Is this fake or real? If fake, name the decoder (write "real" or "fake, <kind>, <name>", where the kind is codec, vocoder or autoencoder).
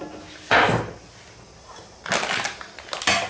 real